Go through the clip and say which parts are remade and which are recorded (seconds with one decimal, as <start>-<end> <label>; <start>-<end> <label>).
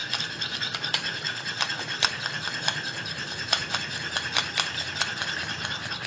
0.0-3.6 remade; 3.6-4.9 recorded; 4.9-6.1 remade